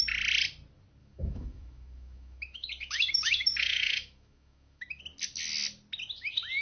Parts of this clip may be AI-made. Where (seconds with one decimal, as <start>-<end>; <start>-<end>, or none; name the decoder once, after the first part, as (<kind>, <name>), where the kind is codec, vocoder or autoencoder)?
1.0-5.0 (autoencoder, DAC-VAE)